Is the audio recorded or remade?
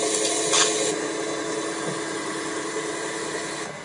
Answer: recorded